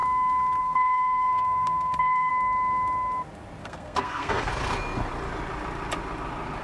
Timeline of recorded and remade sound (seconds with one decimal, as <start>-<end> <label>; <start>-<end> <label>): 0.0-0.6 recorded; 0.6-2.3 remade; 2.3-3.6 recorded; 3.6-4.5 remade; 4.5-6.6 recorded